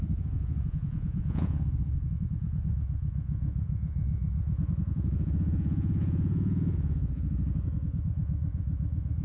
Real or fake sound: fake